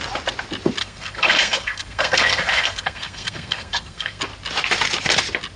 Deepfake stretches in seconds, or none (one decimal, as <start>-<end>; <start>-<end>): 0.8-4.2